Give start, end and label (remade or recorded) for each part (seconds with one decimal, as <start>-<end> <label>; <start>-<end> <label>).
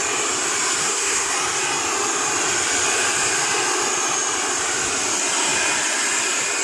0.0-0.8 recorded; 0.8-1.3 remade; 1.3-6.6 recorded